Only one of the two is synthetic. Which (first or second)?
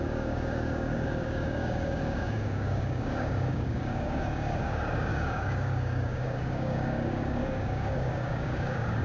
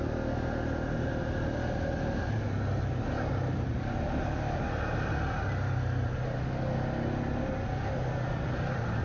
first